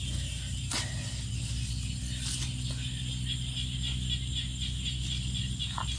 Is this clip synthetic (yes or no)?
no